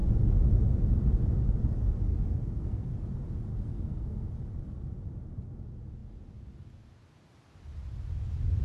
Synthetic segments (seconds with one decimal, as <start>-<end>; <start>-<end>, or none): 2.1-2.9; 3.5-4.3